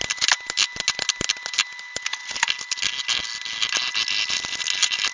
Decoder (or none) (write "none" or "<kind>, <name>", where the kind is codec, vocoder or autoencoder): none